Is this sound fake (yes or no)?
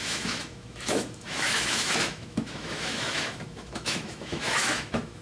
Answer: yes